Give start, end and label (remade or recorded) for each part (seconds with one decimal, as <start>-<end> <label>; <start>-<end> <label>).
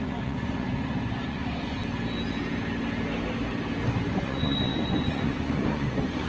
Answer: 0.0-1.8 remade; 1.8-4.1 recorded; 4.1-6.3 remade